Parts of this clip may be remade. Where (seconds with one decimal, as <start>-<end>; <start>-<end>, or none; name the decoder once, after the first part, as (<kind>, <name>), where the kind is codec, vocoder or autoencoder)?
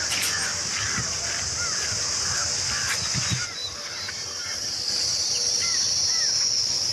0.0-0.5 (vocoder, Vocos); 2.9-3.6; 6.4-6.9